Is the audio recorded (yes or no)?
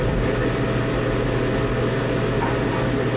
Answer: yes